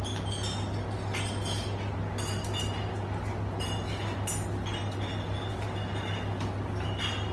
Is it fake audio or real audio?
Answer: real